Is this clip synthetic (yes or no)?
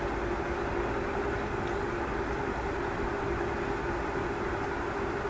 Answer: no